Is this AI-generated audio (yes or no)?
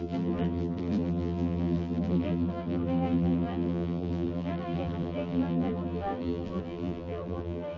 yes